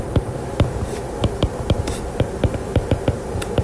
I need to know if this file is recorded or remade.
recorded